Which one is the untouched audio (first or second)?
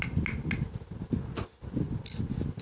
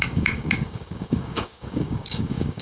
first